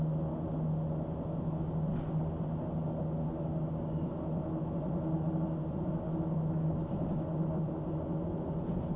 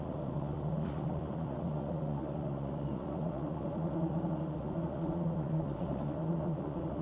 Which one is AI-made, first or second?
second